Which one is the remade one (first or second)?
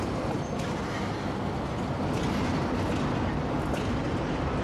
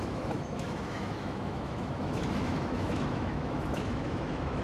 second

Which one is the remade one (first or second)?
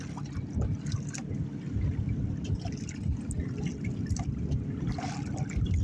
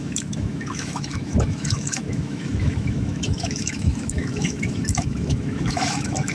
second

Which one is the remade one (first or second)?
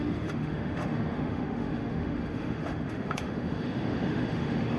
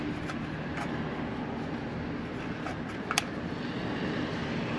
first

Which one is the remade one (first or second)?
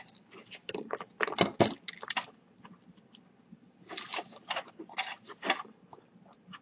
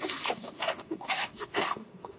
second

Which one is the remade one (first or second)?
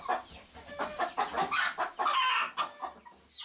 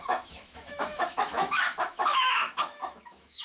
second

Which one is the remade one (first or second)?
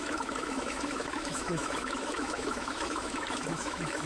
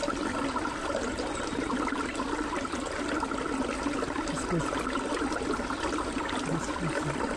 first